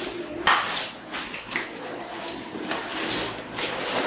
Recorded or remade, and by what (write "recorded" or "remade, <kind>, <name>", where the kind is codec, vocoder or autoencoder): recorded